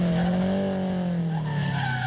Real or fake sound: real